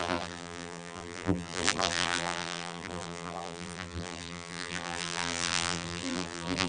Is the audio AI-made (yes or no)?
yes